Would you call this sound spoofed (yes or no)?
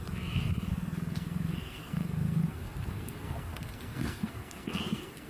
yes